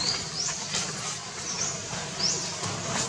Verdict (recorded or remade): remade